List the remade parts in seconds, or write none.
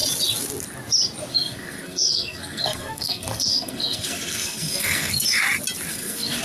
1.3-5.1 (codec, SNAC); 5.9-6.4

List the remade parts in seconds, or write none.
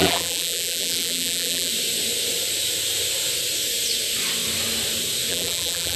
0.0-1.7 (vocoder, BigVGAN v2); 5.3-6.0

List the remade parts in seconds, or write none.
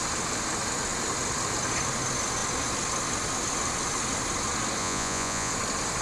4.8-5.5 (vocoder, Vocos)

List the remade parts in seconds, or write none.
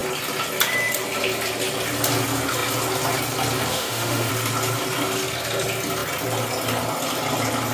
3.7-4.3 (autoencoder, DAC-VAE)